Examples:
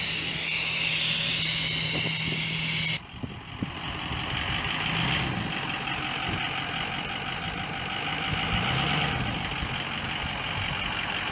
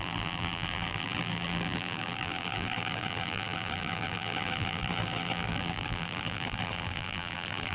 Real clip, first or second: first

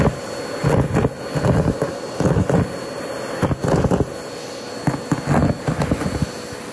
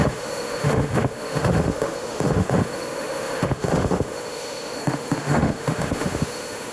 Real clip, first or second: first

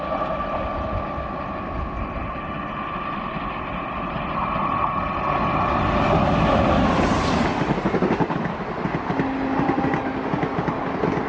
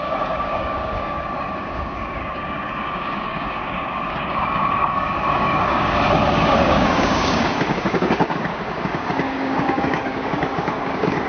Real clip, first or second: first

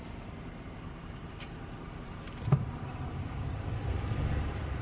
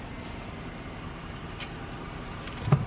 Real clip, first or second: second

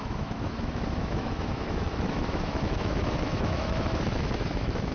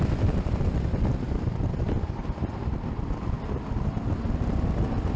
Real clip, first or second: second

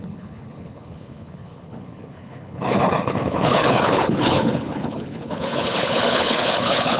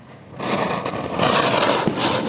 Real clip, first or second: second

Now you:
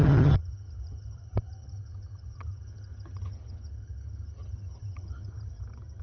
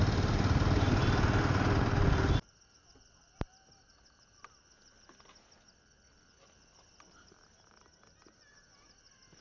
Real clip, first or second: second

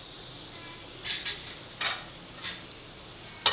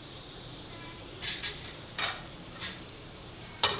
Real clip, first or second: first